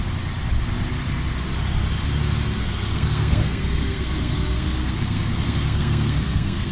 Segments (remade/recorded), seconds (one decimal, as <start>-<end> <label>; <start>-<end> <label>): 0.0-2.6 recorded; 2.6-6.7 remade